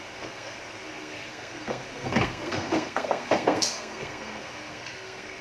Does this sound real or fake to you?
fake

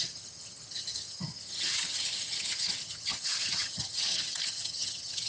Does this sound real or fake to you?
fake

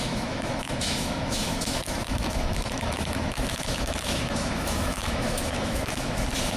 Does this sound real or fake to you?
fake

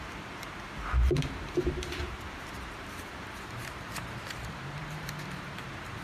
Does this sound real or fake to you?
fake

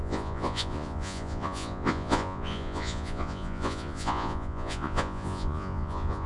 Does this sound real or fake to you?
fake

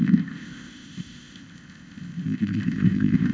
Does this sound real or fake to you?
fake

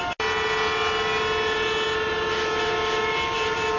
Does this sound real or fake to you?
real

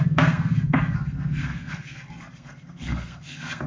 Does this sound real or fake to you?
fake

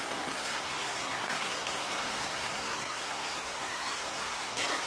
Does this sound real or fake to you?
fake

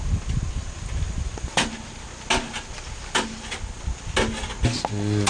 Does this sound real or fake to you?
real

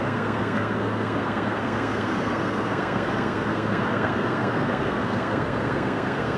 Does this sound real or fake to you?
fake